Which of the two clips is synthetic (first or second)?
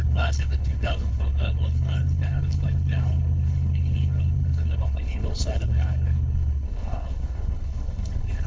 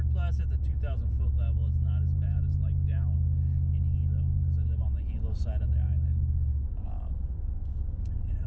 first